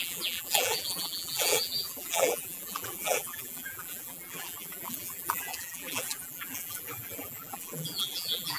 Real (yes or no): no